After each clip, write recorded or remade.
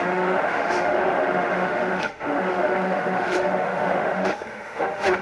remade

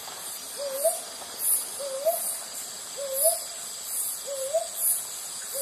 recorded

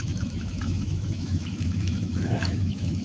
remade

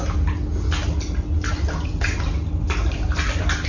recorded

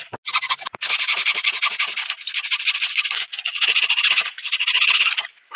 recorded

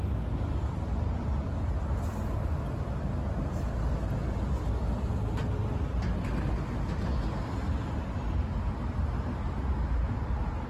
recorded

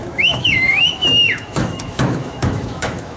remade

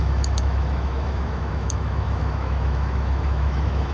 remade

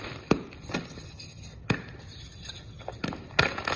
recorded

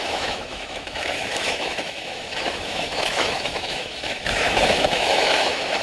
remade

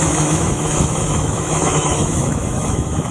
remade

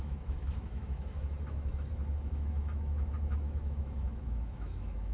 remade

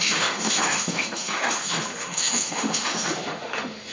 remade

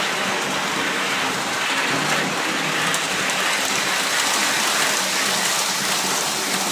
recorded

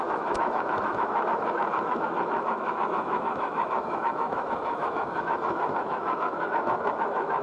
remade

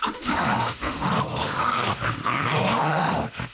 remade